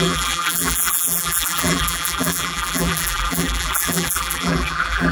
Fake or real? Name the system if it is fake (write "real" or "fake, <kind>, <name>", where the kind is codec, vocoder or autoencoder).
fake, vocoder, BigVGAN v2